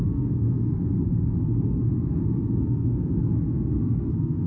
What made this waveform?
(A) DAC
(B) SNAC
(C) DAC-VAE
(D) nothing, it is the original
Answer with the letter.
B